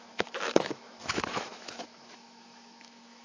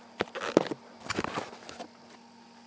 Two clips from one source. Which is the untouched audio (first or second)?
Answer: second